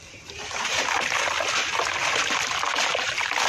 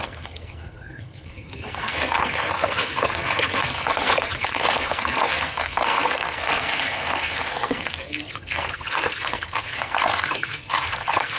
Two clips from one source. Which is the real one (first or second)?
first